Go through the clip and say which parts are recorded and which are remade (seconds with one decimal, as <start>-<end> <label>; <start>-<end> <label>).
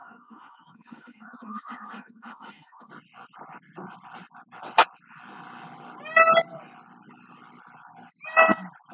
0.0-2.9 remade; 2.9-8.9 recorded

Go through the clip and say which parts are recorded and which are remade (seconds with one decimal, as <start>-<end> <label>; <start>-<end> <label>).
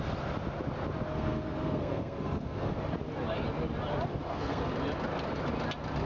0.0-1.1 recorded; 1.1-2.8 remade; 2.8-4.1 recorded; 4.1-4.7 remade; 4.7-6.0 recorded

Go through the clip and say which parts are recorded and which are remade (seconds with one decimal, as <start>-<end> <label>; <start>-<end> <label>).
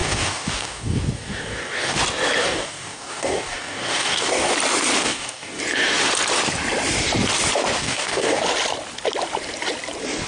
0.0-2.0 remade; 2.0-2.4 recorded; 2.4-4.5 remade; 4.5-5.0 recorded; 5.0-5.6 remade; 5.6-7.8 recorded; 7.8-8.4 remade; 8.4-10.3 recorded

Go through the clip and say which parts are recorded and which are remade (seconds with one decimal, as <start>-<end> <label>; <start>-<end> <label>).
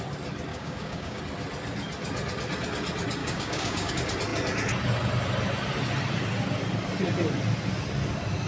0.0-0.5 recorded; 0.5-1.2 remade; 1.2-3.2 recorded; 3.2-3.9 remade; 3.9-8.5 recorded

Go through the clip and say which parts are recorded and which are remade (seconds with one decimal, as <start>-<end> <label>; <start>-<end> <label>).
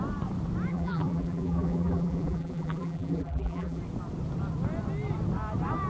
0.0-0.7 recorded; 0.7-3.8 remade; 3.8-5.9 recorded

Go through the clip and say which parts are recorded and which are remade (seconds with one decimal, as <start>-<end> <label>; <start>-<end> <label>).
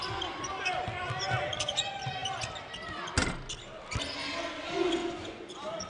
0.0-5.0 recorded; 5.0-5.5 remade; 5.5-5.9 recorded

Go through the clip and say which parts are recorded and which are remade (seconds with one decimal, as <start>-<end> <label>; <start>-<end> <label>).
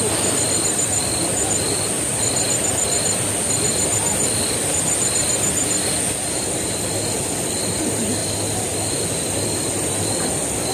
0.0-10.7 recorded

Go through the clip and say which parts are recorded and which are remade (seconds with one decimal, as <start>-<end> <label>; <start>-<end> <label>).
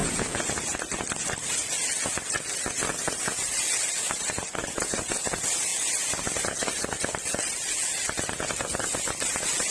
0.0-0.5 remade; 0.5-4.6 recorded; 4.6-5.2 remade; 5.2-9.7 recorded